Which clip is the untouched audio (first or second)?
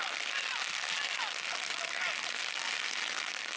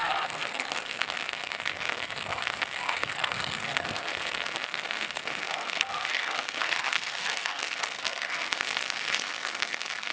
first